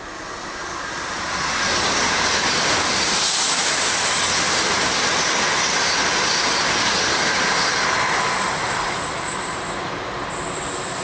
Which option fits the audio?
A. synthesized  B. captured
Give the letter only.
B